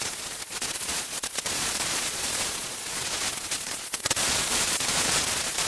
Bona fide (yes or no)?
no